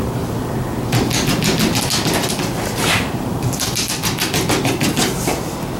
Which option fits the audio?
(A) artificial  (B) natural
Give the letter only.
B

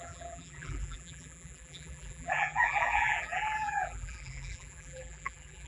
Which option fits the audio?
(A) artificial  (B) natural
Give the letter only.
A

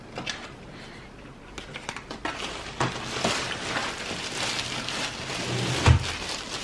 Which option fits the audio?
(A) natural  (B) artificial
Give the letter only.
A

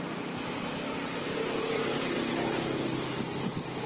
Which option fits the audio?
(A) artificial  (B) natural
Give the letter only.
B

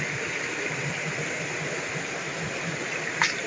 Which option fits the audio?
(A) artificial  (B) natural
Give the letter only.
B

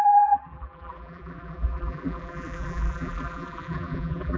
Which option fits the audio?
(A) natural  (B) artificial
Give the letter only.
B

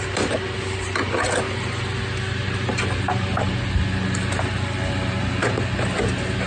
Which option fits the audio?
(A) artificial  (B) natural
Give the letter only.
B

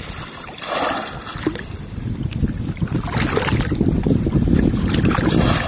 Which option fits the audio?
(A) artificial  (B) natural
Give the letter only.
B